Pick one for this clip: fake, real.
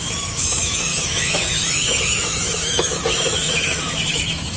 fake